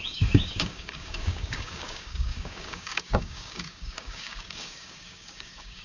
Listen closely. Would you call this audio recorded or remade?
remade